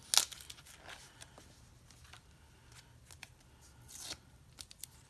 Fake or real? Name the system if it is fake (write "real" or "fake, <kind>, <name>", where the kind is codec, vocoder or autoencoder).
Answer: real